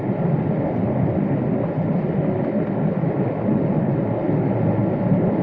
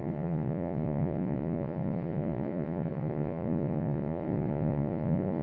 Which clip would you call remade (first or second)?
second